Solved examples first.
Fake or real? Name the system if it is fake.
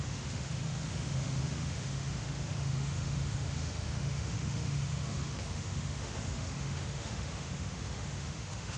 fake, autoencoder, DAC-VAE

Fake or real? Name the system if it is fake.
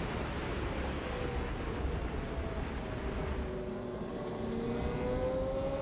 real